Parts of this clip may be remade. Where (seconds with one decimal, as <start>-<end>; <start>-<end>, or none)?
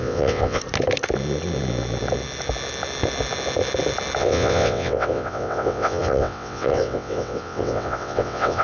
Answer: 0.0-0.6; 4.2-8.6